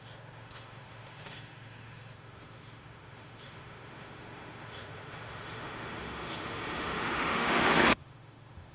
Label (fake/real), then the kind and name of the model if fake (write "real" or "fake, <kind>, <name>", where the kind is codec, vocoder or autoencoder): fake, autoencoder, DAC-VAE